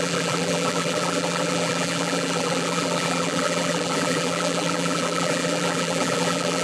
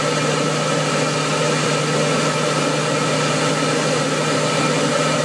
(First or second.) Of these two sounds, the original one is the second